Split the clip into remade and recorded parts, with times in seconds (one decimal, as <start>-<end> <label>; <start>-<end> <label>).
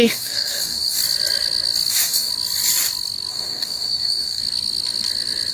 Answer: 0.0-1.0 remade; 1.0-1.9 recorded; 1.9-2.3 remade; 2.3-3.3 recorded; 3.3-4.4 remade; 4.4-5.5 recorded